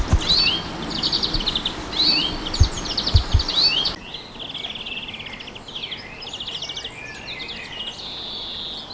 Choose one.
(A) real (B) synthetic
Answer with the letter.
A